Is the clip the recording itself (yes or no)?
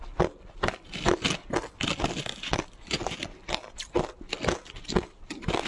yes